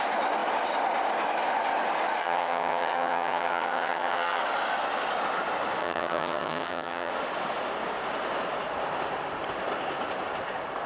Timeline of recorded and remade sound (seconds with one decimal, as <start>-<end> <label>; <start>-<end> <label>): 0.0-2.2 recorded; 2.2-4.4 remade; 4.4-5.8 recorded; 5.8-7.1 remade; 7.1-10.9 recorded